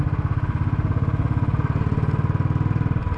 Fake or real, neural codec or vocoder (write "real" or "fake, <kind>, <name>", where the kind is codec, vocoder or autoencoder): real